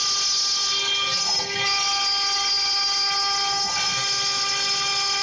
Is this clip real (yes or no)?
yes